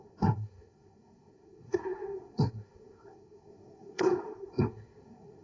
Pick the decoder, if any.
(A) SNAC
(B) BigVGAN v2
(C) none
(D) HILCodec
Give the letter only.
A